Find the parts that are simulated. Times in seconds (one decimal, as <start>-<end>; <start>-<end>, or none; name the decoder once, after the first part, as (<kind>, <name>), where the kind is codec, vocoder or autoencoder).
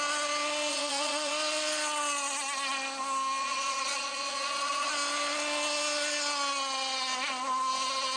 0.7-1.3 (vocoder, Vocos); 3.4-4.9